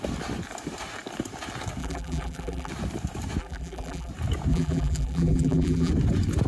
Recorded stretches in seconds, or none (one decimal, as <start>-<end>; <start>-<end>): 0.0-1.8; 2.7-3.4; 4.1-4.5; 5.9-6.5